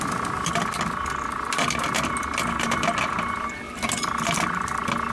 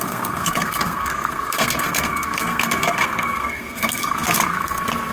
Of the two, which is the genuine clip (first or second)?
first